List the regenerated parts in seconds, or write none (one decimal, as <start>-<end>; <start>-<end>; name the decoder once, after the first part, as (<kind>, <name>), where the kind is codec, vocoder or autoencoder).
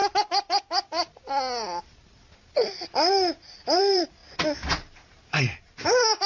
3.8-4.2 (vocoder, BigVGAN v2); 4.7-6.3